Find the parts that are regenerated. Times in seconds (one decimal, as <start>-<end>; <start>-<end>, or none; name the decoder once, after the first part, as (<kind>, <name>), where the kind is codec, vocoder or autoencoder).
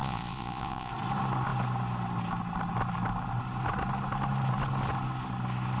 0.0-0.9 (vocoder, Vocos)